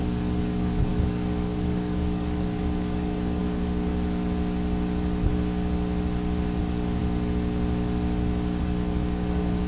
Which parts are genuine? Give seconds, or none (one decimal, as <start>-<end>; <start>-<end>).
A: 3.9-6.6; 7.0-8.6